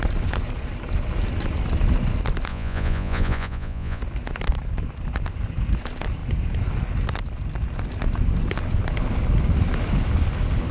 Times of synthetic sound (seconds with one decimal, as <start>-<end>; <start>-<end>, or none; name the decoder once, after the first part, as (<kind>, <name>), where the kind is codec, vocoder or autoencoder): 2.5-4.0 (vocoder, Vocos)